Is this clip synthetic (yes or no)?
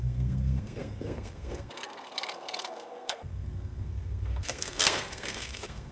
yes